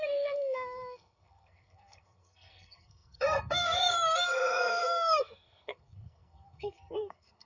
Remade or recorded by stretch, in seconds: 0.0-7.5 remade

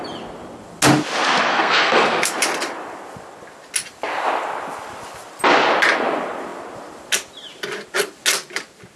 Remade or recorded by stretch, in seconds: 0.0-1.5 recorded; 1.5-2.3 remade; 2.3-9.0 recorded

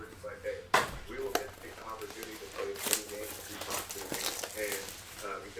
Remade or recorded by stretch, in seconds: 0.0-5.6 recorded

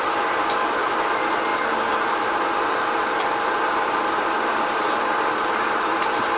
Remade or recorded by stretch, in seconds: 0.0-6.4 recorded

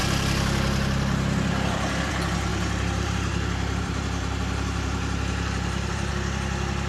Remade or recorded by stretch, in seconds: 0.0-2.5 recorded; 2.5-6.1 remade; 6.1-6.9 recorded

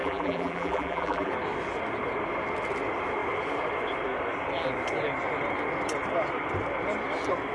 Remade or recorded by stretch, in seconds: 0.0-1.3 remade; 1.3-7.5 recorded

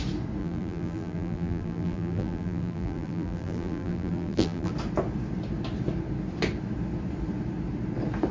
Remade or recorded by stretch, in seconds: 0.0-0.4 recorded; 0.4-4.7 remade; 4.7-8.3 recorded

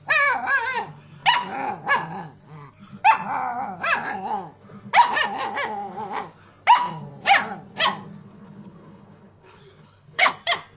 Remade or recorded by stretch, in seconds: 0.0-8.2 recorded; 8.2-10.3 remade; 10.3-10.8 recorded